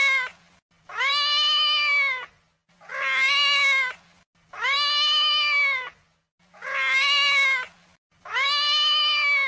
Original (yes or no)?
yes